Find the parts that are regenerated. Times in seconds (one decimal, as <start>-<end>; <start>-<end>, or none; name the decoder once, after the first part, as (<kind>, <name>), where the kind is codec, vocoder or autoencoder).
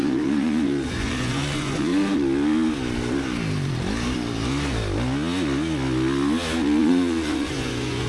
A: 0.0-1.9 (vocoder, Vocos); 6.8-8.1